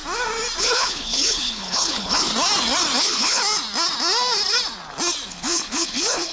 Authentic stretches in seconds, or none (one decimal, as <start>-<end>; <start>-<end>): 0.0-0.6; 2.3-3.0; 3.4-5.3